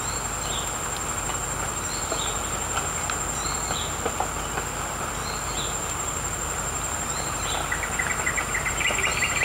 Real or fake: real